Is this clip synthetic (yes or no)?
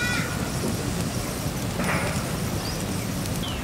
no